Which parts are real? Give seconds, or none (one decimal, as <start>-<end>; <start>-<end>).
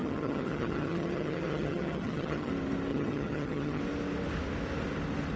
2.5-2.9; 3.8-5.4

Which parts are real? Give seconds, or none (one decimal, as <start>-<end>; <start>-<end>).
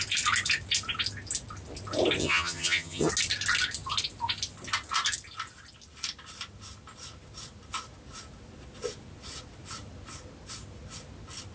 0.0-2.2; 3.1-11.5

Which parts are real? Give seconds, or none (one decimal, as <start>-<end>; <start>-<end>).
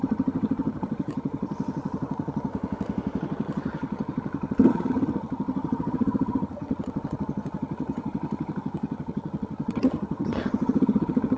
2.5-3.2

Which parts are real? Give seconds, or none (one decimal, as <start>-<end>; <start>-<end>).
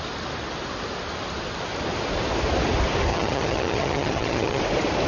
0.0-3.1; 4.6-5.1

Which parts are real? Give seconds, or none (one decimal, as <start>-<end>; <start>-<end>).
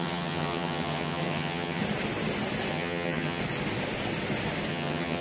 1.8-2.7; 3.4-4.7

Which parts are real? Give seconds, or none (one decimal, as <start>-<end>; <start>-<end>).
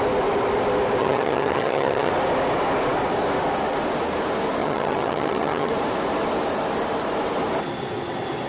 0.0-1.0; 2.1-4.6; 5.7-8.5